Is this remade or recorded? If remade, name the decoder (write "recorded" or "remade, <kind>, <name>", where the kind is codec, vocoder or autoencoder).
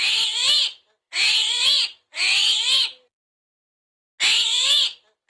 recorded